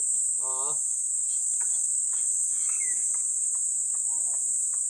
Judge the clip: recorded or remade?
recorded